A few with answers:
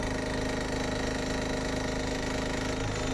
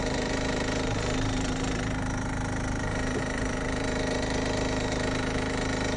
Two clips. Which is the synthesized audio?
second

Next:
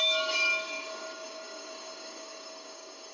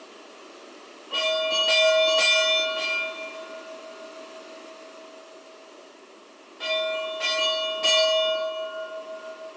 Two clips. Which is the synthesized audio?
first